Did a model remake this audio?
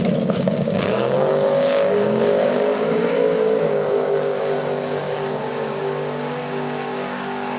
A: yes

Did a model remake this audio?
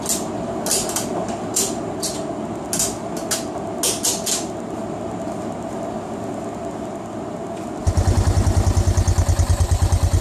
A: no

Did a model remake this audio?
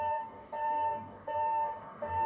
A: yes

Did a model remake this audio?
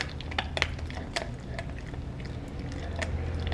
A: no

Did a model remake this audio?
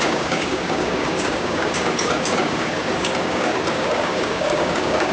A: yes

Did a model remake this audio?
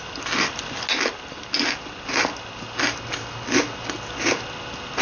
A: no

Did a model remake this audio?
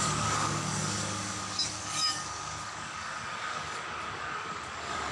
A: yes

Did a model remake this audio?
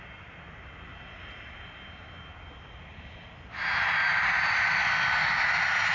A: no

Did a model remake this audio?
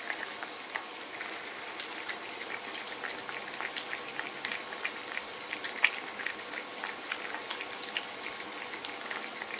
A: no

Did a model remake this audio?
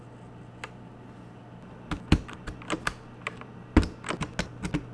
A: no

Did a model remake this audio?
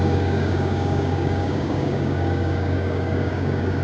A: yes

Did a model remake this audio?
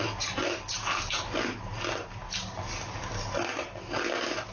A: no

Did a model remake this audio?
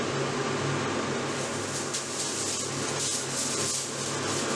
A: no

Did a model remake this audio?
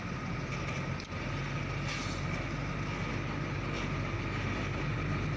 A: no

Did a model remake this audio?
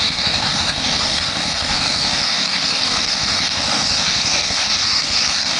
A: yes